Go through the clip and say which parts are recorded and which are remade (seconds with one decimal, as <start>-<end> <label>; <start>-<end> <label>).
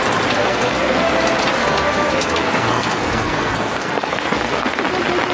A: 0.0-0.4 recorded; 0.4-1.1 remade; 1.1-1.6 recorded; 1.6-4.8 remade; 4.8-5.3 recorded